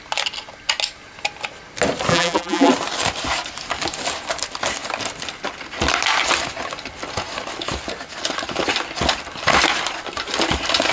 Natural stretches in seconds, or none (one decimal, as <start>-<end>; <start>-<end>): 0.0-2.1; 2.7-10.9